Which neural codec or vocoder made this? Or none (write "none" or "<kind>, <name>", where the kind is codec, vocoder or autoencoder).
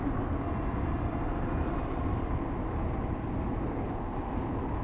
none